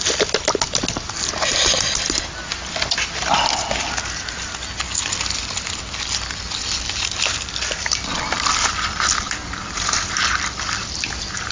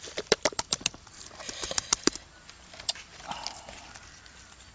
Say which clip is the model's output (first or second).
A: second